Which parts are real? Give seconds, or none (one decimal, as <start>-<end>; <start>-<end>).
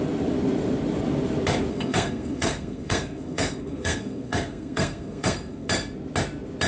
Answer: 0.0-1.7; 5.7-6.7